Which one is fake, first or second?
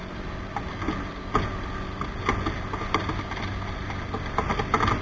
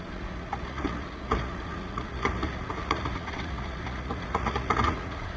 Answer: second